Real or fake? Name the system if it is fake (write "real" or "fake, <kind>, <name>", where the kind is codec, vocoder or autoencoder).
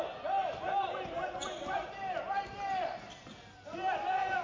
real